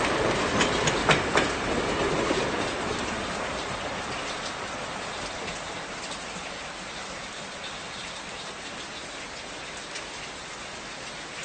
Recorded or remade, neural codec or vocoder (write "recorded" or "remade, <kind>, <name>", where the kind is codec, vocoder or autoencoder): recorded